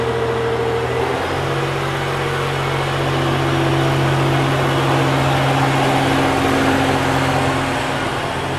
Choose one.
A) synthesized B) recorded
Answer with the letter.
B